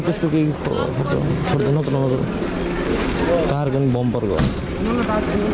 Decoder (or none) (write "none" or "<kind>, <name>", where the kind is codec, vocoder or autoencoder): none